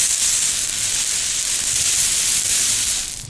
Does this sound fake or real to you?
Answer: real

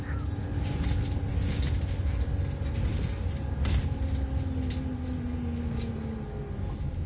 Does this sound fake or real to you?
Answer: real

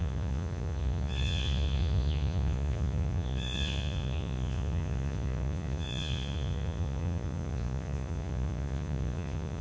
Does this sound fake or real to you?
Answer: fake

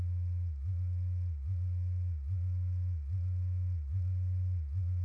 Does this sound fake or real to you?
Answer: real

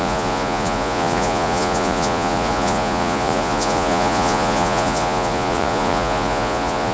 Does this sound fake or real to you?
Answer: fake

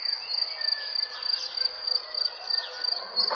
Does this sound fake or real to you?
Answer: real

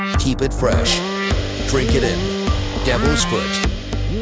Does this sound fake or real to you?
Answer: real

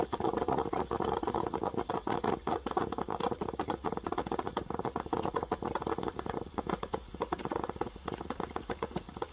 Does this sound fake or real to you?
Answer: fake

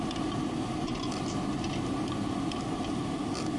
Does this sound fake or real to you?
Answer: real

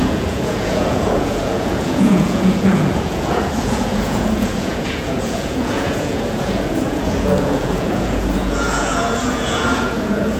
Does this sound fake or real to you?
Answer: fake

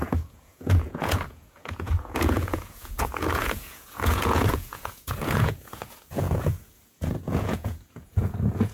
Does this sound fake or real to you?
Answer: fake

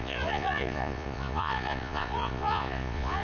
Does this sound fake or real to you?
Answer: fake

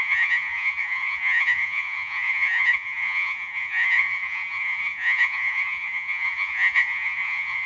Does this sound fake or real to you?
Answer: fake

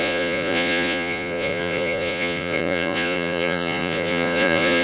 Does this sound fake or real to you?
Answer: fake